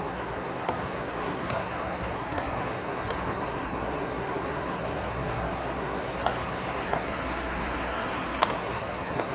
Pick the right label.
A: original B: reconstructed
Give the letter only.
B